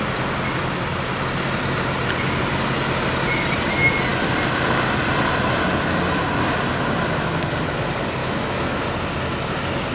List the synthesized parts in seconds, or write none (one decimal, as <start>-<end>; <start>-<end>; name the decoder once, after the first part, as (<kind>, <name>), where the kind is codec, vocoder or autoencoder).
8.2-8.8 (autoencoder, DAC-VAE)